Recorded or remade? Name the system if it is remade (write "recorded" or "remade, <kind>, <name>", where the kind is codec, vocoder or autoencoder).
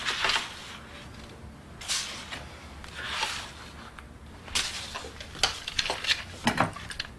recorded